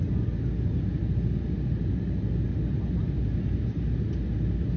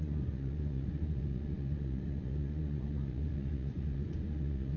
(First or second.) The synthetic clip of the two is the second